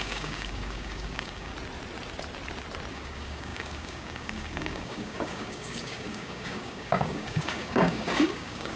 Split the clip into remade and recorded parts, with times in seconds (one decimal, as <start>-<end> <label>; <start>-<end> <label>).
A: 0.0-1.5 remade; 1.5-2.9 recorded; 2.9-8.8 remade